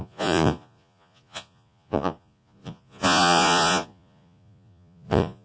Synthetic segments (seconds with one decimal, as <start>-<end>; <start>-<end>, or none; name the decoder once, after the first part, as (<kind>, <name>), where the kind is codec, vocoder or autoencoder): 0.0-5.4 (vocoder, Vocos)